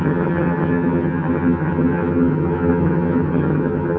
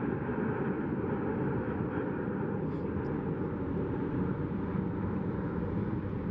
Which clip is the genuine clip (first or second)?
second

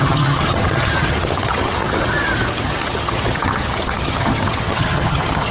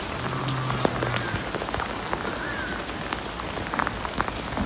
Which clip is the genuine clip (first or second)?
second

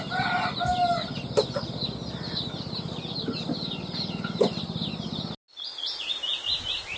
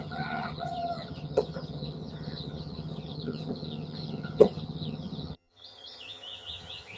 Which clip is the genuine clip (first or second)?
first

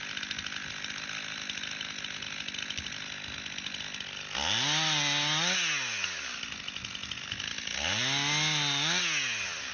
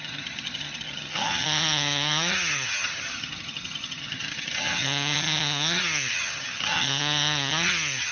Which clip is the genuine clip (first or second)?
first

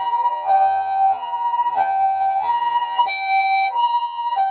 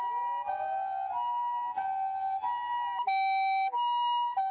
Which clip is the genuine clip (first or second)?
second